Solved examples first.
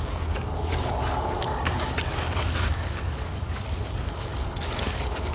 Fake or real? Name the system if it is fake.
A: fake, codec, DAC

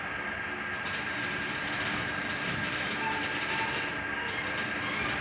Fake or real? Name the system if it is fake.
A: real